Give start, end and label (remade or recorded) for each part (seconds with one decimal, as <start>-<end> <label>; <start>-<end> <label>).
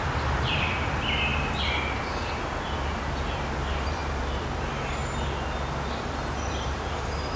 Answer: 0.0-1.3 remade; 1.3-3.2 recorded; 3.2-5.0 remade; 5.0-6.0 recorded; 6.0-7.4 remade